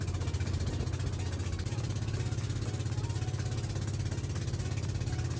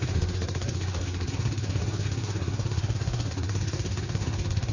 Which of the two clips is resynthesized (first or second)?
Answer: second